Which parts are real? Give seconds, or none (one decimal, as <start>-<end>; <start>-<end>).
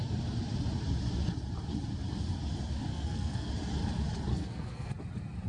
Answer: 0.0-2.9; 3.5-4.3; 4.9-5.5